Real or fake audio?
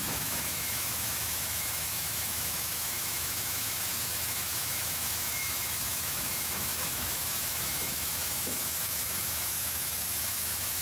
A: fake